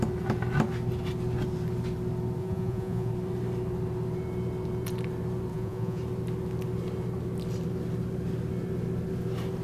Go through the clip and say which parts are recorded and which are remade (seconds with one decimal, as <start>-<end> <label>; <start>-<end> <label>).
0.0-2.4 recorded; 2.4-3.1 remade; 3.1-5.5 recorded; 5.5-6.0 remade; 6.0-9.6 recorded